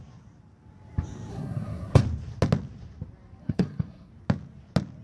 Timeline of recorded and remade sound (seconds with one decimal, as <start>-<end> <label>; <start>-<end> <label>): 0.0-1.3 recorded; 1.3-2.0 remade; 2.0-3.4 recorded; 3.4-4.1 remade; 4.1-5.0 recorded